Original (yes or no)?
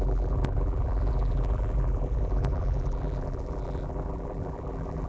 no